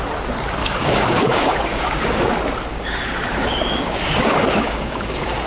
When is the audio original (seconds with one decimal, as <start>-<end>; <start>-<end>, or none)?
0.0-0.6; 2.3-2.7